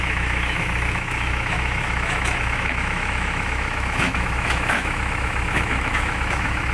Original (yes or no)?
no